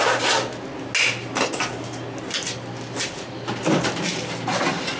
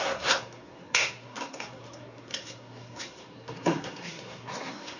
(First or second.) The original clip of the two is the first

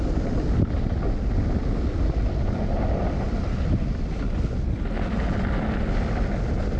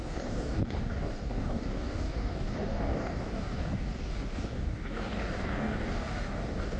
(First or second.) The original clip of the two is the first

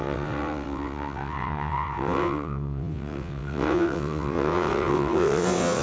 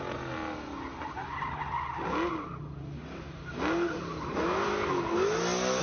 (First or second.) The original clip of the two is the second